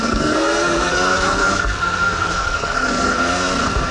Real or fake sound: fake